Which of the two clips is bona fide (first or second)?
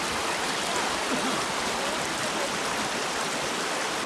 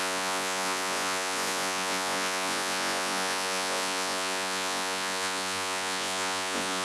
first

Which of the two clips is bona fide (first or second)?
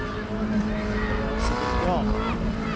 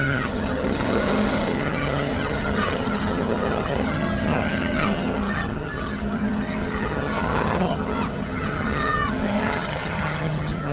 first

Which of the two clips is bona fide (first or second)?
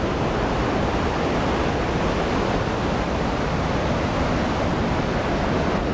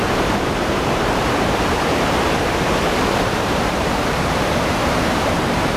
first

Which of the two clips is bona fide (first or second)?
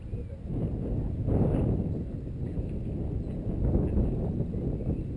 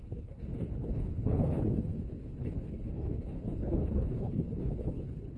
first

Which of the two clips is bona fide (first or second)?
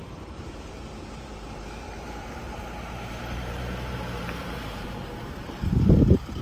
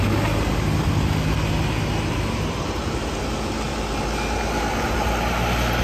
second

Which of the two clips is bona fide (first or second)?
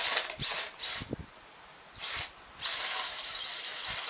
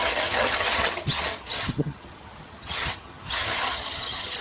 first